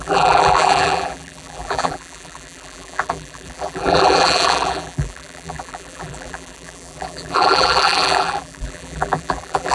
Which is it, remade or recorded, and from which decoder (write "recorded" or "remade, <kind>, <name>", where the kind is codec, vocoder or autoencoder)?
remade, vocoder, BigVGAN v2